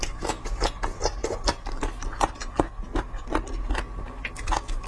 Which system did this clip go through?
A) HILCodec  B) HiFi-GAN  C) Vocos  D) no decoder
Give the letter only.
D